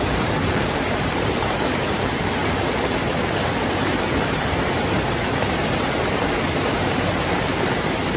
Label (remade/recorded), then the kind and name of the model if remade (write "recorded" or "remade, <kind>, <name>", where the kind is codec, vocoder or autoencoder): remade, vocoder, BigVGAN v2